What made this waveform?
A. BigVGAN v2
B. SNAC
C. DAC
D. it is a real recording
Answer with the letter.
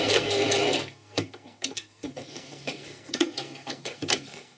B